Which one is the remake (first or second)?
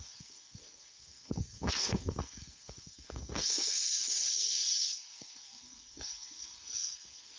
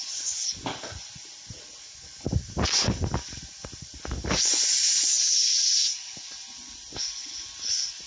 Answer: first